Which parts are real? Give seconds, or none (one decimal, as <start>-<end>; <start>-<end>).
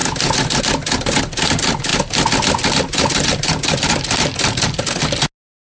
0.0-5.8